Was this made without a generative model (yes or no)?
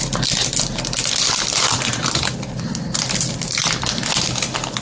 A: yes